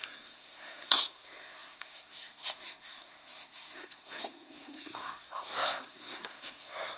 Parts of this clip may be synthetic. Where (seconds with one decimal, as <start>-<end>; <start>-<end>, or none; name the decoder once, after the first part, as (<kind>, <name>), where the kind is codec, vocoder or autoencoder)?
0.0-7.0 (codec, SNAC)